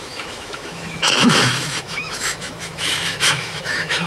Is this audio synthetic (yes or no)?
yes